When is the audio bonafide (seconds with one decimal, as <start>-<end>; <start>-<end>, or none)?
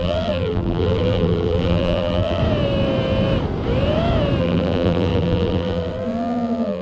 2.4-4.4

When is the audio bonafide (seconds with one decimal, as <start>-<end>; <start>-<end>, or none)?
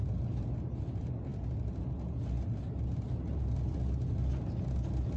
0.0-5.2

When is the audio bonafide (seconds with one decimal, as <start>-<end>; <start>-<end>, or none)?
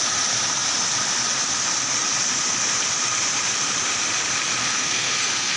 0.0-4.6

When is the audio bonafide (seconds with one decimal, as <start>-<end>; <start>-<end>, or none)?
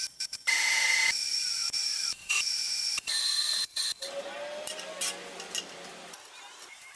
3.8-6.5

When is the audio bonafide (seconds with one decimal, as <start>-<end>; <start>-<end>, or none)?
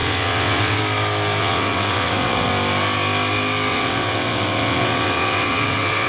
0.8-1.4; 2.5-3.7